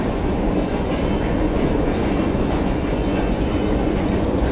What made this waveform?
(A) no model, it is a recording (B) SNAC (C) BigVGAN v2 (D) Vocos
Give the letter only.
D